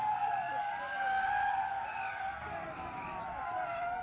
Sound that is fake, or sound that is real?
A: real